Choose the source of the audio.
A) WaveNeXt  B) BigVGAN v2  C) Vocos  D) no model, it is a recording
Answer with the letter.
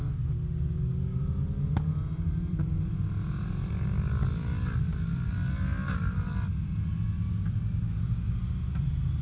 D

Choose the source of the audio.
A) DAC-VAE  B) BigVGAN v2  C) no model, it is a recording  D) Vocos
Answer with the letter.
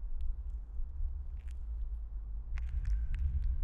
C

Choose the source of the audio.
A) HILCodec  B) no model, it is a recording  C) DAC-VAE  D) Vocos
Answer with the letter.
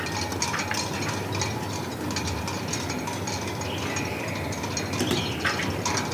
B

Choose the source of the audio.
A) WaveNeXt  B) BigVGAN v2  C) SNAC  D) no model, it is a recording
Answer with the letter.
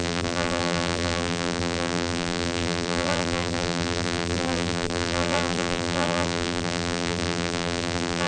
B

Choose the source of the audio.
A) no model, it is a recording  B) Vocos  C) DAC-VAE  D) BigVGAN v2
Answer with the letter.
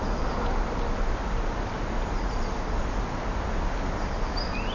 A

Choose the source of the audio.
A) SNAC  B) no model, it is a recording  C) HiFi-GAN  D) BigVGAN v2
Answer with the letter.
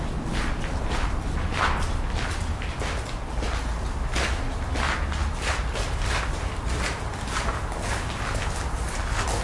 B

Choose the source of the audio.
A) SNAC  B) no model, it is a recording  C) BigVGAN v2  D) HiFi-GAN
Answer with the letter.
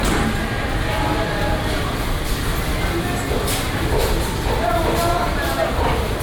B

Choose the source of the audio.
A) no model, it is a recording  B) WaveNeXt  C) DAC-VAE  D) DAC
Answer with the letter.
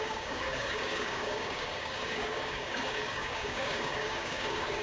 D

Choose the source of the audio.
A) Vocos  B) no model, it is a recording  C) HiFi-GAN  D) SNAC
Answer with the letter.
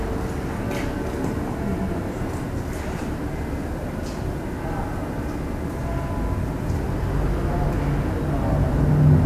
B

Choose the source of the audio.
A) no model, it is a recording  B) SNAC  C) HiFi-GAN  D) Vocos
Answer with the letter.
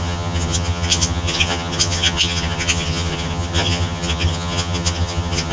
C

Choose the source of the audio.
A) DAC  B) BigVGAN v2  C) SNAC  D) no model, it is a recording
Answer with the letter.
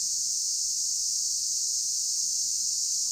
D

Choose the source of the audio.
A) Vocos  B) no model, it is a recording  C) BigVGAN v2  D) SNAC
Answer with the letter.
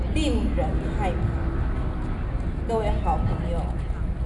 B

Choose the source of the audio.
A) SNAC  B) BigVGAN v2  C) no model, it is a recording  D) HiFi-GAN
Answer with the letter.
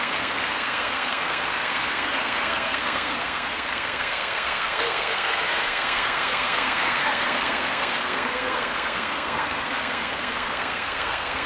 A